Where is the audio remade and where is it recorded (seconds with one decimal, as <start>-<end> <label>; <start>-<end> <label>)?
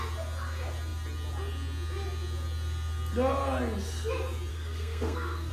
0.0-4.5 recorded; 4.5-5.5 remade